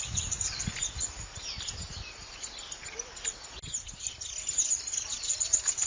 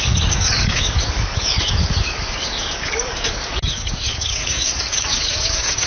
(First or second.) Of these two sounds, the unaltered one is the first